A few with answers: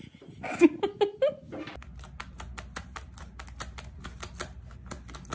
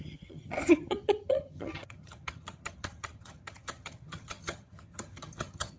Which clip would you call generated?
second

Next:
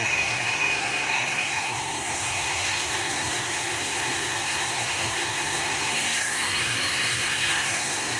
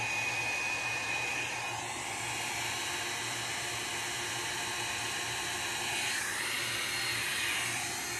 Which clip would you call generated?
first